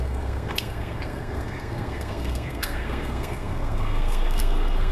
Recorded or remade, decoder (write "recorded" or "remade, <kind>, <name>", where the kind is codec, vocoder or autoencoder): remade, codec, SNAC